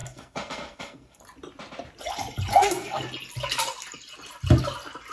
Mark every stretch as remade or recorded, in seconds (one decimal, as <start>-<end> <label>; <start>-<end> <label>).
0.0-1.2 remade; 1.2-2.5 recorded; 2.5-3.0 remade; 3.0-5.1 recorded